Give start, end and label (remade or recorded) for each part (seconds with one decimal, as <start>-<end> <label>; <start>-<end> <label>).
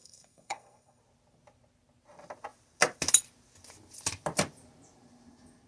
0.0-1.0 remade; 1.0-5.7 recorded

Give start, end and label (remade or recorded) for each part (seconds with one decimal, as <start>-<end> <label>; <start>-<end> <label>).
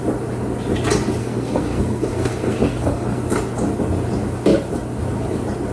0.0-1.2 recorded; 1.2-3.2 remade; 3.2-5.7 recorded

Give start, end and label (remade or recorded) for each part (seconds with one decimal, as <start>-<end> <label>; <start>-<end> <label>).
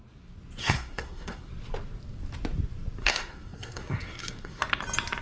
0.0-0.6 recorded; 0.6-1.5 remade; 1.5-3.0 recorded; 3.0-4.6 remade; 4.6-5.2 recorded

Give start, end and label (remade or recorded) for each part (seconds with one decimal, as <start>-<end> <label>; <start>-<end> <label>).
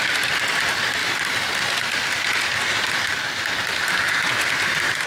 0.0-1.0 recorded; 1.0-2.3 remade; 2.3-5.1 recorded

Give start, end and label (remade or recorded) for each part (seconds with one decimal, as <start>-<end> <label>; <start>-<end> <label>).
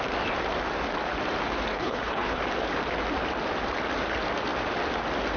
0.0-1.7 recorded; 1.7-2.4 remade; 2.4-5.4 recorded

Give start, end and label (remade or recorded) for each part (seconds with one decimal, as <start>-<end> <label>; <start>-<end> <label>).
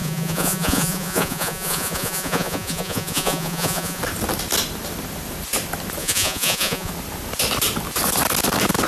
0.0-4.0 remade; 4.0-6.0 recorded; 6.0-6.9 remade; 6.9-8.9 recorded